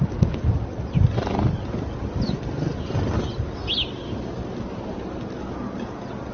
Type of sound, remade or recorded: recorded